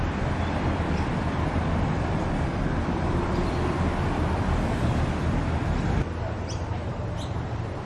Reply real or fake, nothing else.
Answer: fake